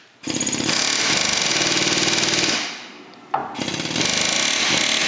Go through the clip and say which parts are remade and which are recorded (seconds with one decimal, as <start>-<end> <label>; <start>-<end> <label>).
0.0-5.1 recorded